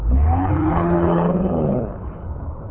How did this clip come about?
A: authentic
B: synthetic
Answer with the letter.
B